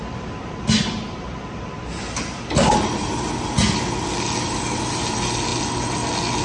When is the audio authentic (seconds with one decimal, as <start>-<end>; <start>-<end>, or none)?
0.0-6.4